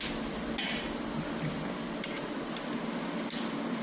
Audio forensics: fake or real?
real